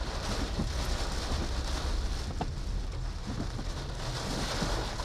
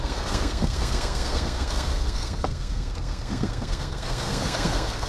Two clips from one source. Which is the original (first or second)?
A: first